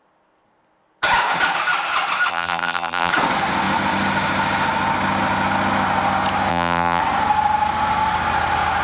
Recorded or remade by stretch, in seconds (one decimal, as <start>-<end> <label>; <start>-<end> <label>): 0.0-2.3 recorded; 2.3-3.1 remade; 3.1-6.5 recorded; 6.5-7.0 remade; 7.0-8.8 recorded